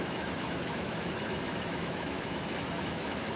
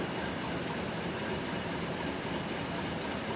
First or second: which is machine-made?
first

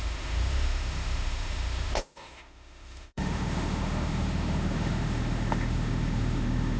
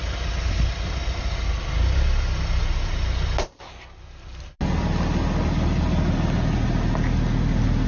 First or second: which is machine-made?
first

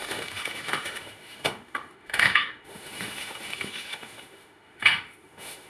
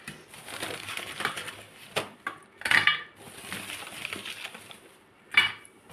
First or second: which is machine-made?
first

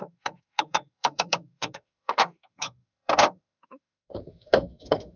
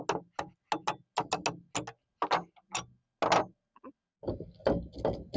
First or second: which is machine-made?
first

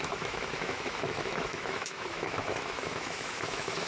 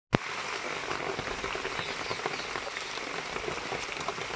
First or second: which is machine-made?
first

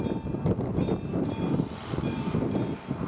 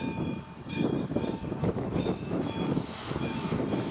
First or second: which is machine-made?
second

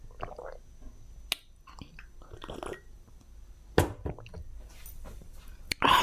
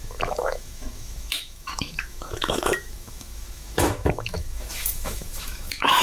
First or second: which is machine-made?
second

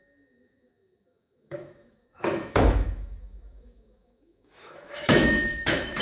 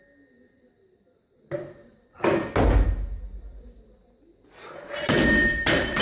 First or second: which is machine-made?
first